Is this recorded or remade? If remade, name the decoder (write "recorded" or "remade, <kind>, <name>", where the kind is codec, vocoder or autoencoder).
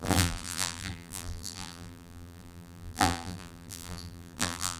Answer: remade, vocoder, BigVGAN v2